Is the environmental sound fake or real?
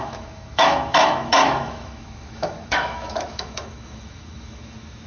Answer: fake